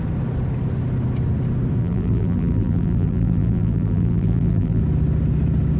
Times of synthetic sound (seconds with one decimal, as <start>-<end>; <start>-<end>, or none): 1.8-4.8

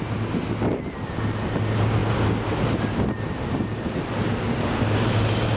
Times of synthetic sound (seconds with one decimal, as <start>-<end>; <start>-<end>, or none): none

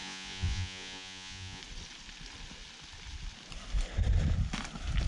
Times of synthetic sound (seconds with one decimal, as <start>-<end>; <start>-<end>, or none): 0.0-1.6

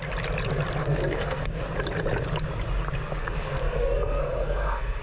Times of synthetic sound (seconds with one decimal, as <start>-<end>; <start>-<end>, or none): 0.8-1.4; 3.2-5.0